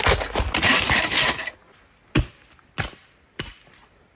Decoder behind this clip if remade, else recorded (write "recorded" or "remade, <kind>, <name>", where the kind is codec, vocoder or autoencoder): recorded